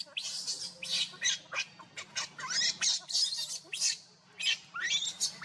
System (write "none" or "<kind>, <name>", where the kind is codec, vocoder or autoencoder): none